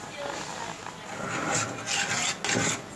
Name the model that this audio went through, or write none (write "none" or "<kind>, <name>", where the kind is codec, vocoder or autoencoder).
none